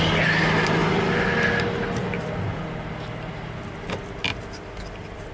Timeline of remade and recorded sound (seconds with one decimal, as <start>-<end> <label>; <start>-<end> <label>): 0.0-5.3 recorded